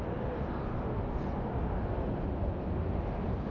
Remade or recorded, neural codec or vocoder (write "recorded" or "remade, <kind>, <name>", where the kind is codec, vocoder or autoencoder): recorded